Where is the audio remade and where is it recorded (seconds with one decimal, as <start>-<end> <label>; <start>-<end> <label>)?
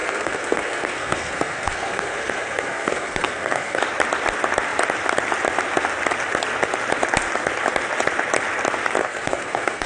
0.0-3.8 remade; 3.8-9.0 recorded; 9.0-9.9 remade